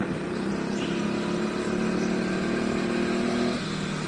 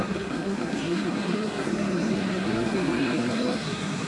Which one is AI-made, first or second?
second